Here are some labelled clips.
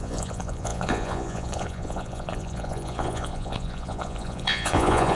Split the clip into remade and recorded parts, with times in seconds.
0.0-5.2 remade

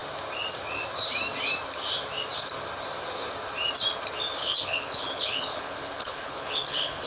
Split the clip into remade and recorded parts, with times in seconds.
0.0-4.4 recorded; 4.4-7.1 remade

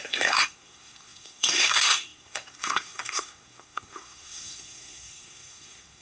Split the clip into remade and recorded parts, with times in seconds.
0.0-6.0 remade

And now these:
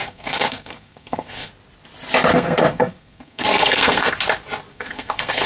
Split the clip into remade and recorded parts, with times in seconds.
0.0-1.5 remade; 1.5-2.3 recorded; 2.3-4.1 remade; 4.1-4.7 recorded; 4.7-5.5 remade

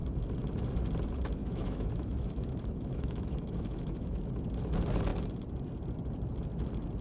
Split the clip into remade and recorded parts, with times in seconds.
0.0-1.4 recorded; 1.4-4.3 remade; 4.3-7.0 recorded